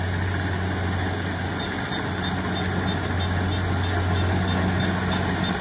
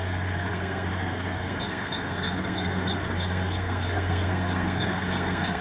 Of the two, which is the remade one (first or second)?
second